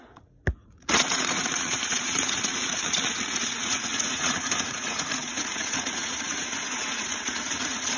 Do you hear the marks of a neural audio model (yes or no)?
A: yes